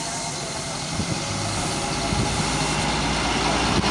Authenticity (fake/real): real